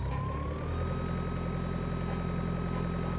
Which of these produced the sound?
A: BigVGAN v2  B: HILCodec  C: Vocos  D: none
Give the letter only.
D